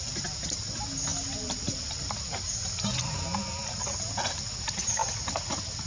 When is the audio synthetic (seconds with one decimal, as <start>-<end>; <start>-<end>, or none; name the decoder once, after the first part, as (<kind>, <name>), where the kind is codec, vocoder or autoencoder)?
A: none